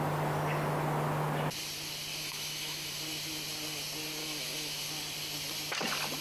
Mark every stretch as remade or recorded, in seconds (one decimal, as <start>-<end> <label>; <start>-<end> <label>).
0.0-2.1 recorded; 2.1-2.9 remade; 2.9-4.2 recorded; 4.2-4.8 remade; 4.8-6.2 recorded